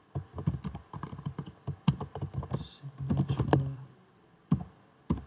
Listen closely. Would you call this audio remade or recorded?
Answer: recorded